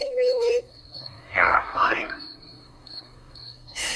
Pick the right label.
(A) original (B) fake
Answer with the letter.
B